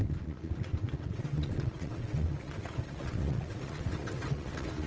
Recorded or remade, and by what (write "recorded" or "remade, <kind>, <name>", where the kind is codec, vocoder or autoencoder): remade, vocoder, WaveNeXt